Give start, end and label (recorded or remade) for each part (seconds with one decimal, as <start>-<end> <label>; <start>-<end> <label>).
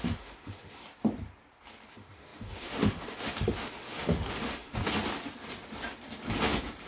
0.0-0.8 remade; 0.8-1.9 recorded; 1.9-4.8 remade; 4.8-6.9 recorded